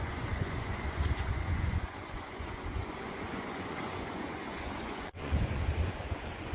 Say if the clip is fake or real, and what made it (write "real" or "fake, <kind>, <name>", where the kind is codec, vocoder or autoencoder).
fake, vocoder, Vocos